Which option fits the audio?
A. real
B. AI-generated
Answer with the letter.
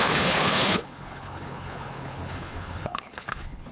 B